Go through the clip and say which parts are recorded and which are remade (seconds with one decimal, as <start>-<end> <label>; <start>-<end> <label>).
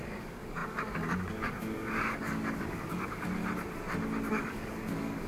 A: 0.0-3.4 remade; 3.4-4.3 recorded; 4.3-5.3 remade